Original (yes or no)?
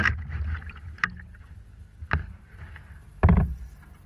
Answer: yes